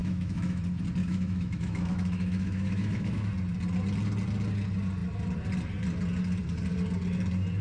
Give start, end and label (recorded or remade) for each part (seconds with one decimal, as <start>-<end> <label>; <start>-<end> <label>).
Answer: 0.0-0.6 remade; 0.6-1.0 recorded; 1.0-3.3 remade; 3.3-7.6 recorded